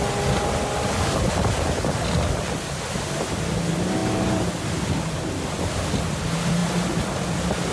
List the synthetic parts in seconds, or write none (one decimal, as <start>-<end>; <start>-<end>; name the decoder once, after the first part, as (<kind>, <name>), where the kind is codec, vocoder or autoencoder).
none